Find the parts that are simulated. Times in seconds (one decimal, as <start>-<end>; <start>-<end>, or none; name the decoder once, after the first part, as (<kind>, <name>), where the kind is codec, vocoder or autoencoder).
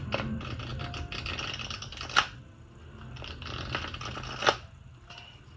none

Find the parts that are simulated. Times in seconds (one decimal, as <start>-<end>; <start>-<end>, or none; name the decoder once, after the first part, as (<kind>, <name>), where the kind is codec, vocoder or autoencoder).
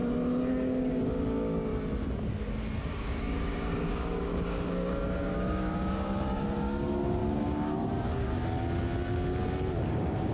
0.5-1.7 (codec, DAC); 2.8-8.4; 9.9-10.3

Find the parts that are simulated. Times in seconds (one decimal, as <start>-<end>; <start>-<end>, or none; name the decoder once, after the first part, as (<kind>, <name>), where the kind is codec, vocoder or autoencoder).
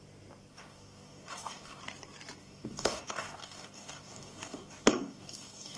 0.5-1.8 (codec, DAC); 2.4-5.8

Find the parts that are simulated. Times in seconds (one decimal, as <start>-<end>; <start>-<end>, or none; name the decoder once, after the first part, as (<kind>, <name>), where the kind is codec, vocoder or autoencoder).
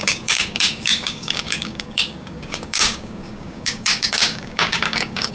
0.0-5.3 (codec, DAC)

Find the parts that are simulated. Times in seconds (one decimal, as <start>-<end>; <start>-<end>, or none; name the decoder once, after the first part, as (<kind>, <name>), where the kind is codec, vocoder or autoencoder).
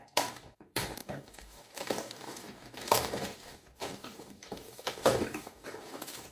0.0-6.3 (codec, DAC)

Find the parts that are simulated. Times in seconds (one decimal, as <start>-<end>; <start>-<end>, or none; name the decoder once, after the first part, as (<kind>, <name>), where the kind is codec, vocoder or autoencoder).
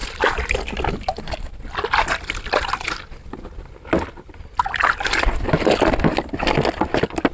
none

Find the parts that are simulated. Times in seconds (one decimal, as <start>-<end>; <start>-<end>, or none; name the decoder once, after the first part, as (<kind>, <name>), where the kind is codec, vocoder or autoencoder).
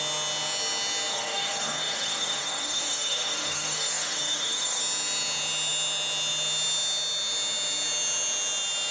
1.1-4.8 (codec, DAC)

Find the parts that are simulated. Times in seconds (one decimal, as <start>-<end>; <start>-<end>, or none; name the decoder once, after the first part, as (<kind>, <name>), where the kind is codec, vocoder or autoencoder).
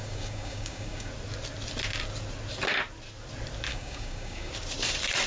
0.0-1.1 (codec, DAC); 3.7-4.5